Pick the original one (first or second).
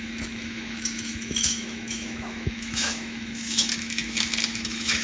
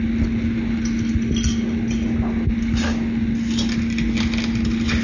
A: second